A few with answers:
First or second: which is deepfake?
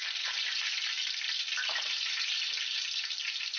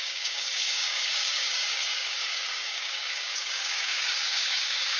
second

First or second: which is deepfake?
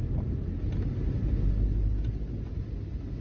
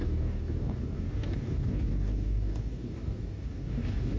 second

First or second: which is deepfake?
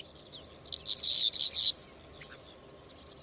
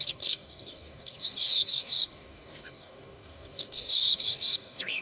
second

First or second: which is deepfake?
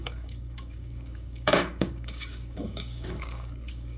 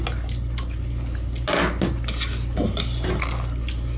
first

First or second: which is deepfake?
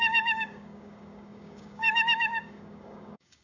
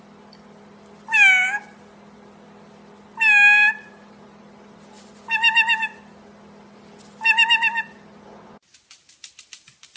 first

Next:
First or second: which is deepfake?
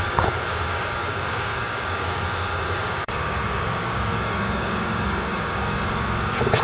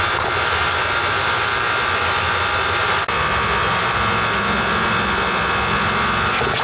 first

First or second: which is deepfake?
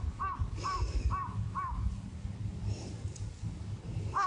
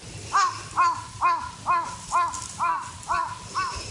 first